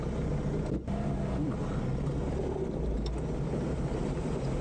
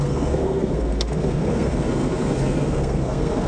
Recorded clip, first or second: first